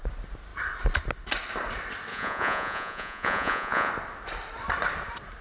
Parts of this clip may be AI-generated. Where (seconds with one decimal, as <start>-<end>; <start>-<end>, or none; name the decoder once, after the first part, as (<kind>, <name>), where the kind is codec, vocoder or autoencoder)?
2.1-3.9 (vocoder, Vocos)